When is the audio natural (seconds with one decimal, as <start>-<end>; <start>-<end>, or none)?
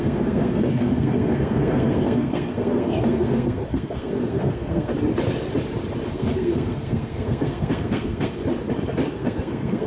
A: 4.9-6.1; 8.4-9.1